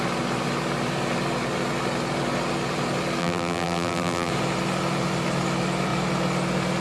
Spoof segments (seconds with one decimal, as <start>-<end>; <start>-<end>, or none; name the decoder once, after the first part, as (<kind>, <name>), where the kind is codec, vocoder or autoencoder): 3.2-4.3 (vocoder, BigVGAN v2)